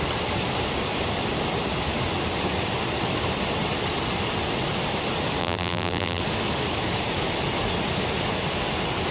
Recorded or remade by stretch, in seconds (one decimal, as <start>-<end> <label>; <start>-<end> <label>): 0.0-5.4 recorded; 5.4-6.2 remade; 6.2-9.1 recorded

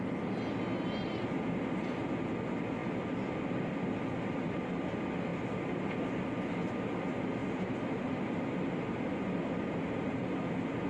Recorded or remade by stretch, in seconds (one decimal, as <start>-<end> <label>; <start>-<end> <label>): 0.0-7.4 recorded; 7.4-8.3 remade; 8.3-10.9 recorded

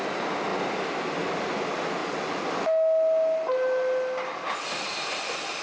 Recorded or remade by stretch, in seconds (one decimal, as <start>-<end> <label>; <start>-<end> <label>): 0.0-5.6 recorded

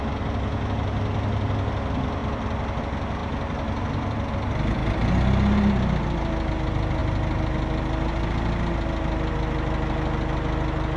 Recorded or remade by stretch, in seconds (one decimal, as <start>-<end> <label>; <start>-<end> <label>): 0.0-2.2 recorded; 2.2-2.8 remade; 2.8-3.2 recorded; 3.2-4.3 remade; 4.3-11.0 recorded

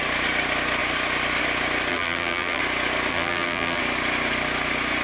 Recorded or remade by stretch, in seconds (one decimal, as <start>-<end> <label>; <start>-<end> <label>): 0.0-1.9 recorded; 1.9-2.6 remade; 2.6-3.1 recorded; 3.1-3.8 remade; 3.8-5.0 recorded

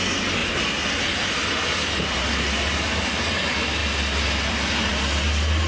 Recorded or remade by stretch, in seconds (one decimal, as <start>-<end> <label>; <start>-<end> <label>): 0.0-0.4 recorded; 0.4-3.3 remade; 3.3-5.7 recorded